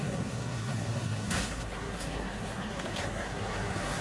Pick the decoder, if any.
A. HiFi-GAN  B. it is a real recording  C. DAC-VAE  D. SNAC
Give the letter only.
D